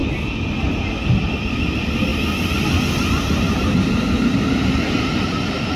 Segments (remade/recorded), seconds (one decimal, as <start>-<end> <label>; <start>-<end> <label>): 0.0-5.8 recorded